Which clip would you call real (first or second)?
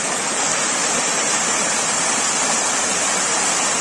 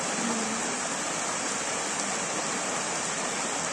second